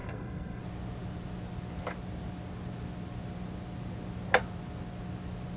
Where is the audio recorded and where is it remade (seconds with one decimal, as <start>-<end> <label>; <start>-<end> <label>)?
0.0-0.6 remade; 0.6-5.6 recorded